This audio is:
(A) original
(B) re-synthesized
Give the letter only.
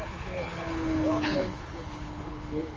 B